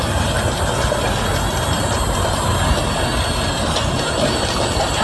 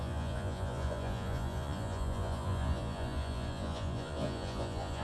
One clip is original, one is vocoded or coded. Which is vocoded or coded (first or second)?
second